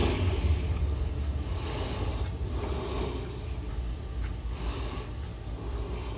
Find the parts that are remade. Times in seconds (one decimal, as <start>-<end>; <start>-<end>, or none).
0.0-2.1; 3.7-5.3